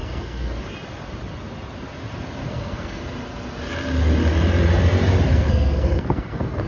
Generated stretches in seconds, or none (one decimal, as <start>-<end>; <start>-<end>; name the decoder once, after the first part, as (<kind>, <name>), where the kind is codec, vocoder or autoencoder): 0.0-0.6 (codec, SNAC); 2.4-3.0; 5.3-6.7